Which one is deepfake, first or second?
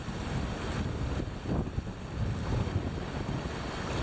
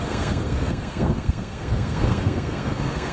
second